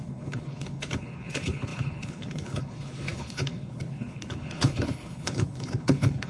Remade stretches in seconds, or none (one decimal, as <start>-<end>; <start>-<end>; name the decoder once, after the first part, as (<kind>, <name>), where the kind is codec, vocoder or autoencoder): 0.0-6.3 (codec, HILCodec)